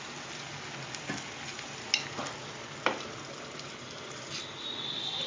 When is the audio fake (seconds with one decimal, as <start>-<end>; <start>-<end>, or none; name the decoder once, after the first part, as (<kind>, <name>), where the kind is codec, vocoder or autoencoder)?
none